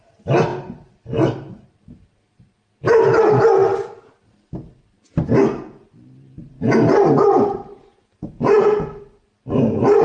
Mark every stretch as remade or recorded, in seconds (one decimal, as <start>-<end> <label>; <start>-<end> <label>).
0.0-7.8 recorded; 7.8-9.0 remade; 9.0-10.0 recorded